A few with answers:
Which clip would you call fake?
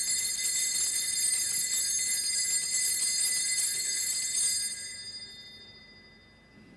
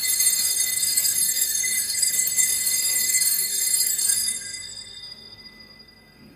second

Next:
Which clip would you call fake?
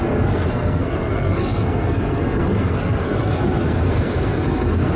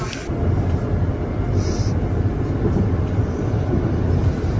first